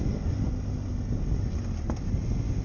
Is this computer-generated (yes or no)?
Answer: no